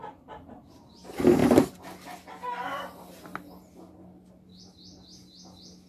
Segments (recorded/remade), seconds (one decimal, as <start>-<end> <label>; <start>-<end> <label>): 0.0-5.9 recorded